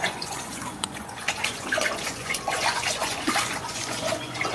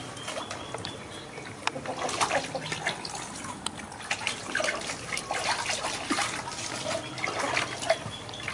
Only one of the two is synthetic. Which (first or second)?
first